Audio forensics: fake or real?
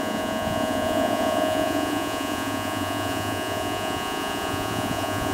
fake